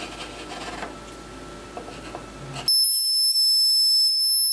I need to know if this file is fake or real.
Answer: real